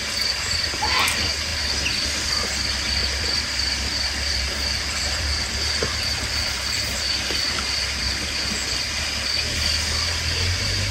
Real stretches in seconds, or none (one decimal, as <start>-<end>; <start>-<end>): 0.0-3.0; 8.0-10.9